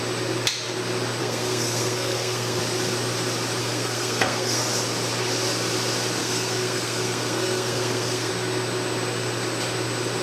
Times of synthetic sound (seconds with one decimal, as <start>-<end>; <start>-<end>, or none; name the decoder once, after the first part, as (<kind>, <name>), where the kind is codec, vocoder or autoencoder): 1.2-2.6 (codec, SNAC); 3.6-4.6; 6.2-8.3